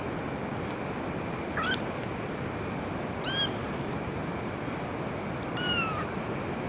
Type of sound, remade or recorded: recorded